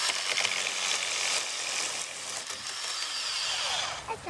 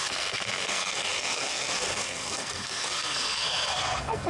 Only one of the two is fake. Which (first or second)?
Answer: second